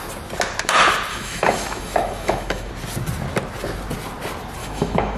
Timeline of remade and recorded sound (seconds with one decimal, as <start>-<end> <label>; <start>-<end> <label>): 0.0-1.1 recorded; 1.1-2.7 remade; 2.7-4.6 recorded; 4.6-5.2 remade